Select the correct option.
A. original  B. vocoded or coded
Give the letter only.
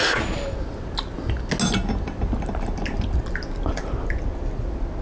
A